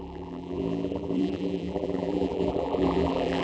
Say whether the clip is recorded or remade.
remade